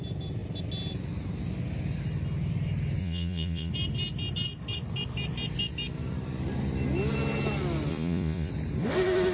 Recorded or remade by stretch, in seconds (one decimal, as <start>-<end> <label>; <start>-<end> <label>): 0.0-3.0 recorded; 3.0-3.7 remade; 3.7-7.9 recorded; 7.9-8.5 remade; 8.5-9.3 recorded